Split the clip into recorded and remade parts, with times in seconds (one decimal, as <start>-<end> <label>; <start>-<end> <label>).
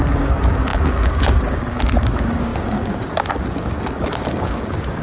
0.0-5.0 remade